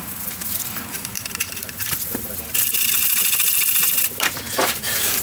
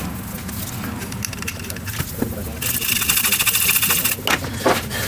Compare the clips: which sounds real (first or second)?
second